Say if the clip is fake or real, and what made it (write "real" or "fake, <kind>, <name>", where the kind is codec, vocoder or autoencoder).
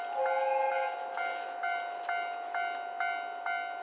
real